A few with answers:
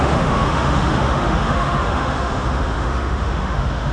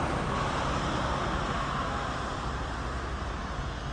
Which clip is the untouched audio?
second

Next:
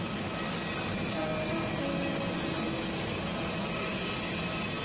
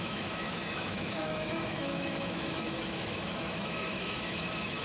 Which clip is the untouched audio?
first